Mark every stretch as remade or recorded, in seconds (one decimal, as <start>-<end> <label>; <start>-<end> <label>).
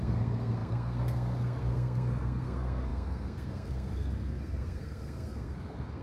0.0-6.0 remade